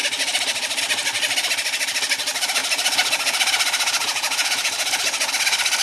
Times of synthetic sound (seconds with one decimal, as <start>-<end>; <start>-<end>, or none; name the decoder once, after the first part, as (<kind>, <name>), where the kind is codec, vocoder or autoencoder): 2.6-5.3 (vocoder, Vocos)